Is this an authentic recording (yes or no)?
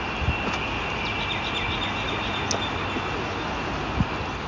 yes